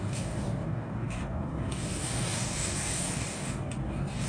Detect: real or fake fake